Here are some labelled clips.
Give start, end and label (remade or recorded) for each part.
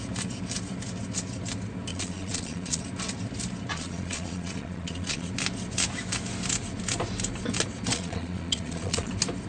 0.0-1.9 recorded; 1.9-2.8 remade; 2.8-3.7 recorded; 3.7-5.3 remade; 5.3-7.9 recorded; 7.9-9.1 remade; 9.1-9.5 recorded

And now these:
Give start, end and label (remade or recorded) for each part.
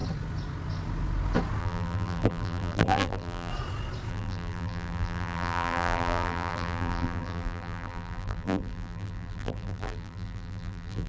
0.0-1.6 recorded; 1.6-3.5 remade; 3.5-4.1 recorded; 4.1-11.1 remade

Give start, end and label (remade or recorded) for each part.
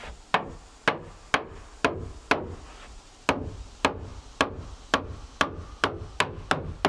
0.0-6.9 recorded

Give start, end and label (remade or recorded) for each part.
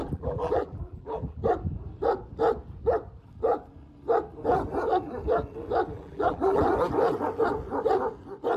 0.0-1.4 remade; 1.4-5.9 recorded; 5.9-6.6 remade; 6.6-8.6 recorded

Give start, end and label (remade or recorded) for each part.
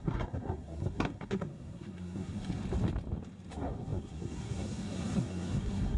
0.0-2.6 remade; 2.6-3.5 recorded; 3.5-6.0 remade